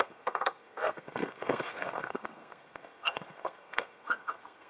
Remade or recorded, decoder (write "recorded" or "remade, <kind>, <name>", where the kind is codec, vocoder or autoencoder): remade, codec, SNAC